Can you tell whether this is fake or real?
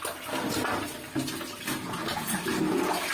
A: real